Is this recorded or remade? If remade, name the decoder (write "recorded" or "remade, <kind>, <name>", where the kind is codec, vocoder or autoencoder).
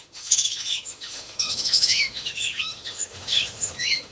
remade, autoencoder, DAC-VAE